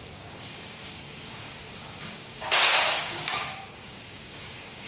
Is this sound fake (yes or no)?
yes